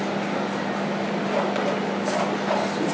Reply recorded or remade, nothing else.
recorded